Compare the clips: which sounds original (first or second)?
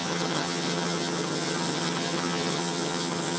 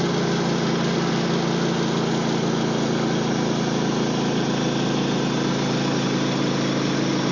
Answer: second